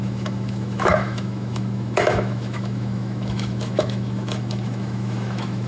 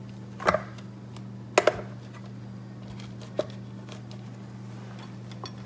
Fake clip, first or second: first